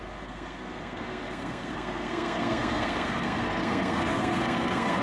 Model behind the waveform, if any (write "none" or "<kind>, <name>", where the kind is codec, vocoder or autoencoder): codec, SNAC